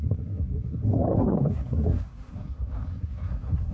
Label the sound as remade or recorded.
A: remade